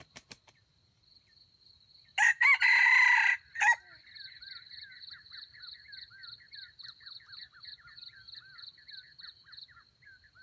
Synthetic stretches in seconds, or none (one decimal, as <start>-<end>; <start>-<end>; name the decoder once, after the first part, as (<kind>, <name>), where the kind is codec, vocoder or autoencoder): none